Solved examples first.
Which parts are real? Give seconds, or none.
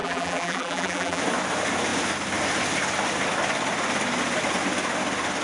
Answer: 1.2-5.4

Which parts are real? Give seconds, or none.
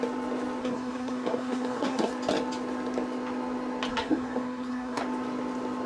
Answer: 0.0-0.6; 2.1-3.9; 5.0-5.9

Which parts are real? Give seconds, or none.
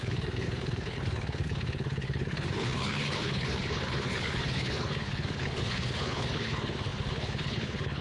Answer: none